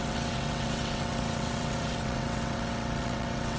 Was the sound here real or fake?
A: fake